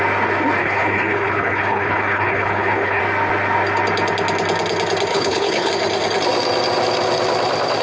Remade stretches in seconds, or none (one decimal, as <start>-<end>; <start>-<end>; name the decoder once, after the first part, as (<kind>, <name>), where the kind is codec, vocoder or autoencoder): 0.6-3.0 (codec, HILCodec); 5.1-5.7